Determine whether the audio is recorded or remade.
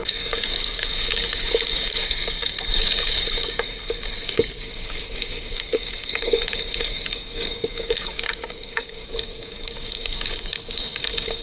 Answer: remade